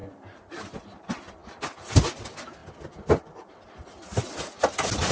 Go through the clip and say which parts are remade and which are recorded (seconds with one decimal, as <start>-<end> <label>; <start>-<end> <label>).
0.0-5.1 recorded